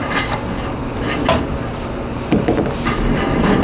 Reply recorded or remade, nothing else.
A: recorded